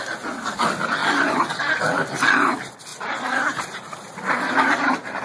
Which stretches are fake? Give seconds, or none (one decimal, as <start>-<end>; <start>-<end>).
1.0-1.8; 2.9-5.2